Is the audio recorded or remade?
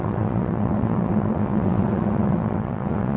remade